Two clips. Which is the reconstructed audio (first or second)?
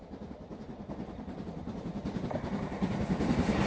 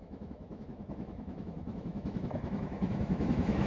second